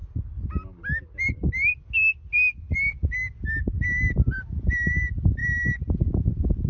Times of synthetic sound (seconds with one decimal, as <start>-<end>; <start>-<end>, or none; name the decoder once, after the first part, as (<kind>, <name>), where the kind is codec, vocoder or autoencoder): none